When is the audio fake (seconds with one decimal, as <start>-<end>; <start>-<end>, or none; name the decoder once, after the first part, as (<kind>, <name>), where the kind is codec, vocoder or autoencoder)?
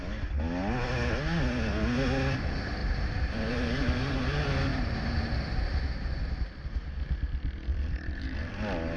2.8-4.2 (vocoder, BigVGAN v2); 4.7-6.0; 7.7-8.5